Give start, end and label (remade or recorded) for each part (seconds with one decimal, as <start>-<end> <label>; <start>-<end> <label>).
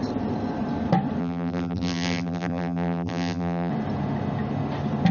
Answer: 0.0-1.2 recorded; 1.2-3.7 remade; 3.7-5.1 recorded